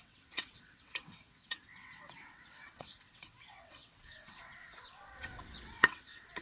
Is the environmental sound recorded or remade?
remade